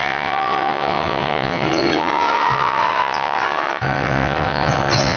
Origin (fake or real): fake